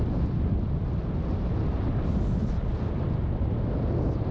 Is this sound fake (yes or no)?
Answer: no